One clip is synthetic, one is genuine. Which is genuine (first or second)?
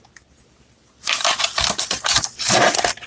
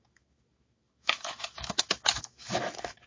first